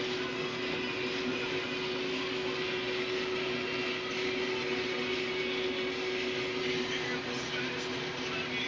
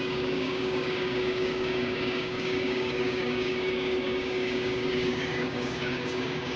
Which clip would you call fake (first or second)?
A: second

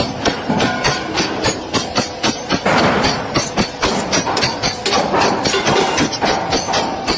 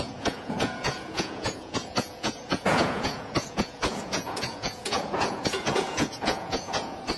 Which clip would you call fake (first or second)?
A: second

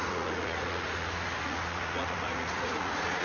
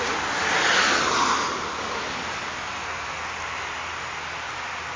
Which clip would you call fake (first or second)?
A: first